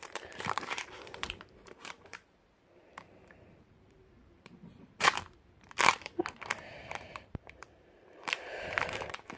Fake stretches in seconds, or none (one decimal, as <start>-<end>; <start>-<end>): 0.0-6.2; 6.8-9.4